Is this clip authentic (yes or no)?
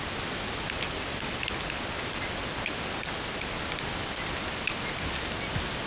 yes